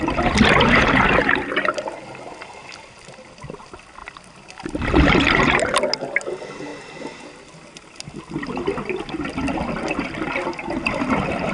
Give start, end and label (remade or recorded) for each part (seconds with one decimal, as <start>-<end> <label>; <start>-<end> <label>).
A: 0.0-11.5 recorded